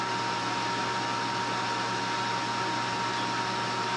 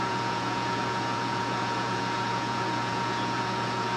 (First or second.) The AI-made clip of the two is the second